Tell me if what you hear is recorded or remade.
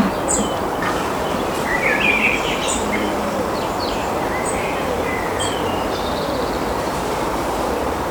remade